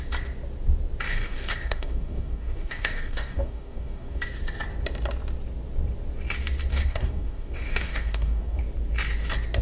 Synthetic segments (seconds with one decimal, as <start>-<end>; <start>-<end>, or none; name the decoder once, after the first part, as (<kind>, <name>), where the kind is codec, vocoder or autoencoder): 1.1-4.2 (codec, DAC); 6.7-8.6